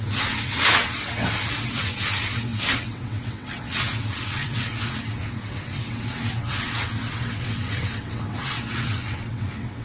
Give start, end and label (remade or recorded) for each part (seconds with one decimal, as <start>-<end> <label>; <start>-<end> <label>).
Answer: 0.0-9.8 remade